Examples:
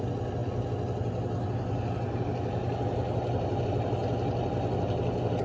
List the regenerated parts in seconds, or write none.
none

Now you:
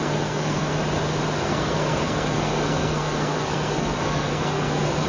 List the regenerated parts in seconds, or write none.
0.0-0.8 (codec, SNAC); 1.4-5.1